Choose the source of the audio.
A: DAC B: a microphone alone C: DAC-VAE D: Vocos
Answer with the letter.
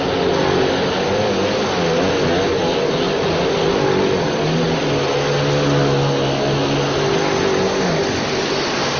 B